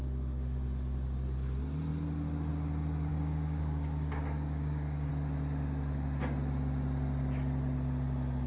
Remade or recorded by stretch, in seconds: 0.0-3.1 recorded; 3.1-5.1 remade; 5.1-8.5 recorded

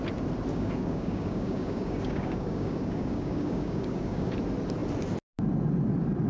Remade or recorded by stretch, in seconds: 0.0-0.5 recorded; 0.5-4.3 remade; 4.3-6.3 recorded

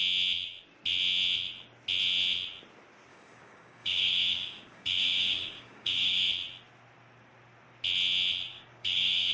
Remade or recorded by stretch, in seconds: 0.0-3.1 recorded; 3.1-6.3 remade; 6.3-8.5 recorded; 8.5-9.3 remade

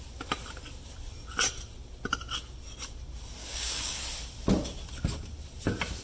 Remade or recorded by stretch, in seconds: 0.0-3.4 recorded; 3.4-4.0 remade; 4.0-6.0 recorded

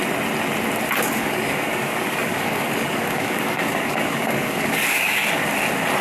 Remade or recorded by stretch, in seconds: 0.0-1.0 recorded; 1.0-5.2 remade; 5.2-6.0 recorded